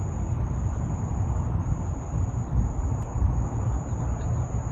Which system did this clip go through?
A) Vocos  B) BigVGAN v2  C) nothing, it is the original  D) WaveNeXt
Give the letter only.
C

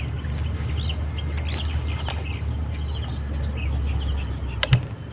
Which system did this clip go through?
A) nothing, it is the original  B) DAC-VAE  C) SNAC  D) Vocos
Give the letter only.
A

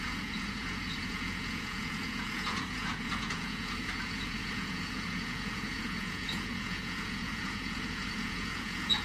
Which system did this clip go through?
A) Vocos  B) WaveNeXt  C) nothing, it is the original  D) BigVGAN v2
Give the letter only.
A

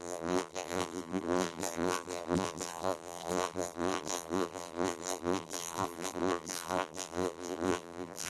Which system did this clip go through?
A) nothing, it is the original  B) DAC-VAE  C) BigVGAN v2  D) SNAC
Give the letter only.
C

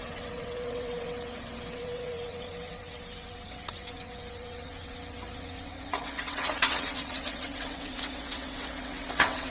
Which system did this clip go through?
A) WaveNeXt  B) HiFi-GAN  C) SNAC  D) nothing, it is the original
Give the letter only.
A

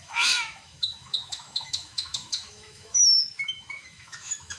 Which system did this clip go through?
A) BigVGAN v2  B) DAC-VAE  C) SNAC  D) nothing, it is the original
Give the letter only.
B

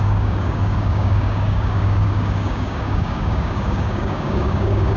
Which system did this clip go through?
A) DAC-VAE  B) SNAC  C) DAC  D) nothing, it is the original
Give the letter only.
C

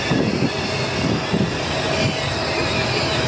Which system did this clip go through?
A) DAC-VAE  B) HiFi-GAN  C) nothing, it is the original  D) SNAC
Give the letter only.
C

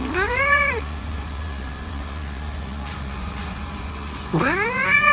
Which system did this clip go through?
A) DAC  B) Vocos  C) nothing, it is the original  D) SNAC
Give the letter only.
B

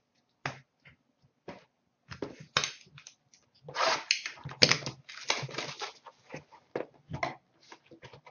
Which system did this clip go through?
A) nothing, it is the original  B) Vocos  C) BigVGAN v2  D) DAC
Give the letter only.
A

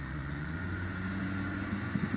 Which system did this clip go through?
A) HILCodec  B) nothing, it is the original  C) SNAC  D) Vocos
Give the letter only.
D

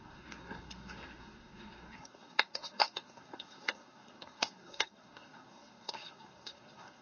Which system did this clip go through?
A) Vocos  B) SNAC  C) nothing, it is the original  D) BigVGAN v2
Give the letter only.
B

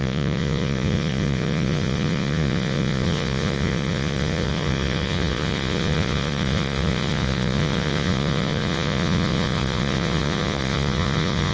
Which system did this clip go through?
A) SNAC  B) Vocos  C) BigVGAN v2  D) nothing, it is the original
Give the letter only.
B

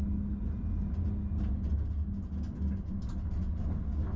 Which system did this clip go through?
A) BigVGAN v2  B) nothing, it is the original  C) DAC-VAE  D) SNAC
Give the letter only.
B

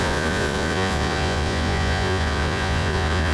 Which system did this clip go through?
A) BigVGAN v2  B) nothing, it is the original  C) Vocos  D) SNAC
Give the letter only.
C